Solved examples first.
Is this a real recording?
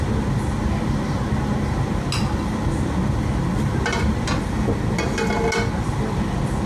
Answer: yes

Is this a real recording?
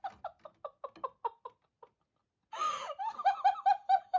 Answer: yes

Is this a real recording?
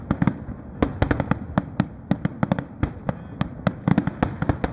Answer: yes